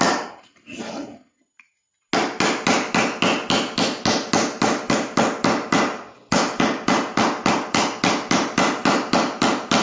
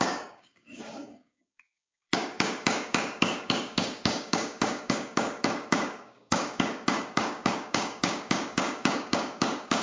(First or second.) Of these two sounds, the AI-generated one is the second